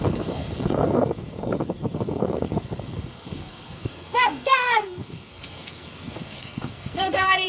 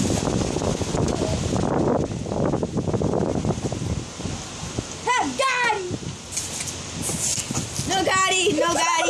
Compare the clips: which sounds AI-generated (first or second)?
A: first